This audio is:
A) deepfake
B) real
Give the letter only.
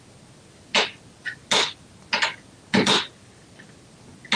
B